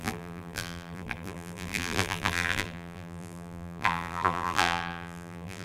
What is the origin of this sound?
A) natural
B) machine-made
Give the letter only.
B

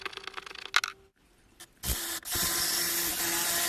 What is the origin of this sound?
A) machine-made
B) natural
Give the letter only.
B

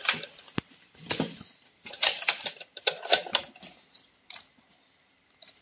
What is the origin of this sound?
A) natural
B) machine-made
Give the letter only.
B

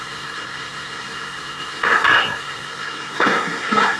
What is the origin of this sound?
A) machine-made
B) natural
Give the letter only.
A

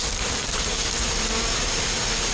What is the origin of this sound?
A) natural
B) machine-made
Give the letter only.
A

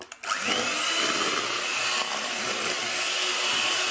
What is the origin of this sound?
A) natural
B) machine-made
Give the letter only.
A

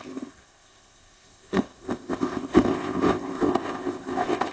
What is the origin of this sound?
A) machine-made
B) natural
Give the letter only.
A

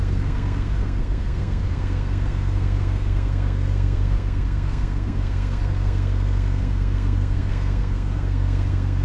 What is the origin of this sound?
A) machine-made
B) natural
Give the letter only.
A